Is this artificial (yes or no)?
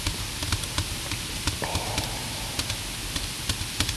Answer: no